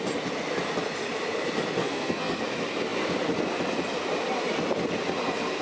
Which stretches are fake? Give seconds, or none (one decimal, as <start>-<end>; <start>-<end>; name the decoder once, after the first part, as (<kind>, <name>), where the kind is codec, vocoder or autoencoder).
1.8-2.4 (codec, SNAC)

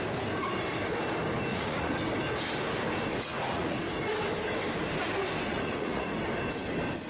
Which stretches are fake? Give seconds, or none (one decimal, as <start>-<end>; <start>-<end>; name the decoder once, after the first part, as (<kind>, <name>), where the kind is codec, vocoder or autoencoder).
1.5-2.0 (vocoder, Vocos); 3.1-3.8; 5.5-6.1

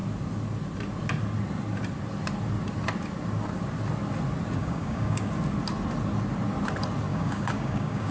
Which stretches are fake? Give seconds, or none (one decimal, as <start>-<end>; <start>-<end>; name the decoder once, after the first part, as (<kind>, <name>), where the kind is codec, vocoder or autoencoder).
4.6-5.3 (codec, DAC); 7.1-8.1

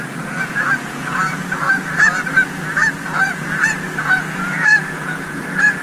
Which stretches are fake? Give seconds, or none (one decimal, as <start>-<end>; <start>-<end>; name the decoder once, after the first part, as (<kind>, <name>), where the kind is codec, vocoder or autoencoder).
0.0-5.8 (vocoder, Vocos)

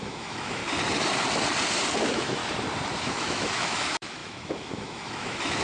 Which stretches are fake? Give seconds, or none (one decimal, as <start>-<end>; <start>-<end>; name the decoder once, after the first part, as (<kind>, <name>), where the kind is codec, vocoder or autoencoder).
0.0-0.6 (autoencoder, DAC-VAE); 2.0-2.4; 3.0-5.6

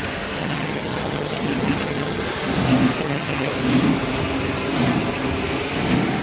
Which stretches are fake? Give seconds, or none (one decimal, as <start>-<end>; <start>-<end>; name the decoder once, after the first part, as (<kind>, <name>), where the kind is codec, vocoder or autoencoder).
0.4-2.2 (vocoder, HiFi-GAN); 3.0-3.5

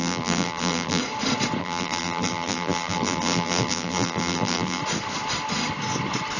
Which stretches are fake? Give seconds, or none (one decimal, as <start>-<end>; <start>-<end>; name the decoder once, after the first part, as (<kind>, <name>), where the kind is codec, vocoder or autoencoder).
0.0-1.0 (vocoder, BigVGAN v2); 1.6-4.8

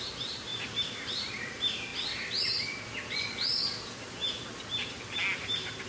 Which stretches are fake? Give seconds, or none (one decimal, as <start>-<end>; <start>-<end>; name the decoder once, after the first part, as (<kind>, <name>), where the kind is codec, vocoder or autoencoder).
0.0-1.9 (vocoder, BigVGAN v2); 5.4-5.9